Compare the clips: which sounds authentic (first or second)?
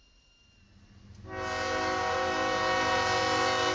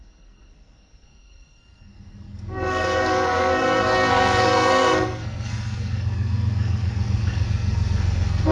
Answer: first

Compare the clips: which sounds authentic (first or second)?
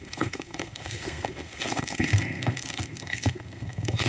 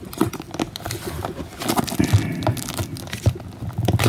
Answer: second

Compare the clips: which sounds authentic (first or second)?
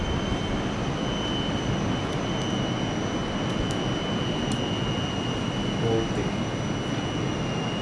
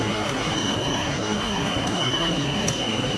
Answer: first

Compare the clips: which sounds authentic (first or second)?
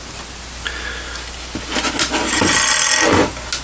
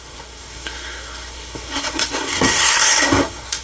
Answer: first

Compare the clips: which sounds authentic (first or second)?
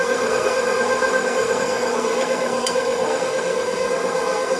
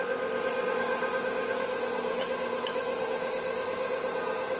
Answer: second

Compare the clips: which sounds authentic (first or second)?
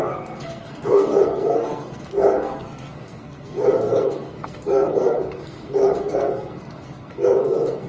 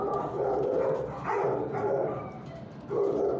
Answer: second